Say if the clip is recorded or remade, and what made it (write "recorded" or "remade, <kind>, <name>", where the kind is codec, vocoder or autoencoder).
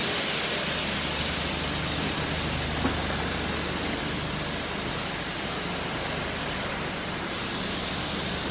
recorded